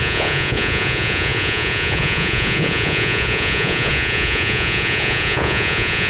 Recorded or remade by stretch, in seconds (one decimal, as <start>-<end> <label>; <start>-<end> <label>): 0.0-6.1 remade

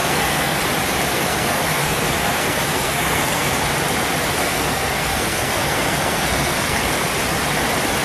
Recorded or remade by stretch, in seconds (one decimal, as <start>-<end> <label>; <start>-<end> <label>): 0.0-0.6 remade; 0.6-1.1 recorded; 1.1-3.5 remade; 3.5-4.4 recorded; 4.4-7.1 remade; 7.1-8.0 recorded

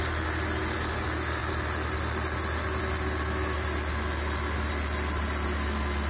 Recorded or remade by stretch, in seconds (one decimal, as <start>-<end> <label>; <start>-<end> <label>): 0.0-6.1 recorded

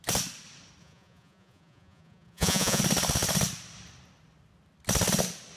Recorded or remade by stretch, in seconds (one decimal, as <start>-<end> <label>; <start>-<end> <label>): 0.0-0.8 recorded; 0.8-2.8 remade; 2.8-5.6 recorded

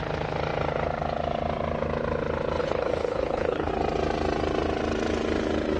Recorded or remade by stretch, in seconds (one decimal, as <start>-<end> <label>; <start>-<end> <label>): 0.0-2.6 recorded; 2.6-3.7 remade; 3.7-5.8 recorded

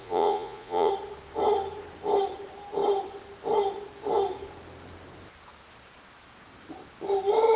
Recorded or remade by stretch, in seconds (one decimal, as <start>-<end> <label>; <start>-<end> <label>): 0.0-0.9 remade; 0.9-7.6 recorded